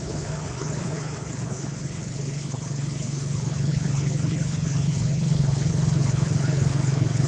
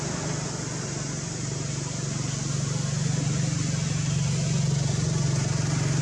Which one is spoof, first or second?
first